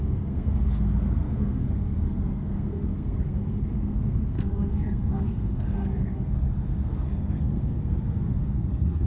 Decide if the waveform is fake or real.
fake